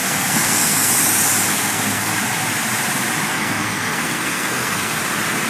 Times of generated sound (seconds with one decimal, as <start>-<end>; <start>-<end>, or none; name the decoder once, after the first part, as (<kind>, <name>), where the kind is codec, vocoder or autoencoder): 0.0-0.9 (codec, SNAC); 1.5-2.1; 3.3-5.0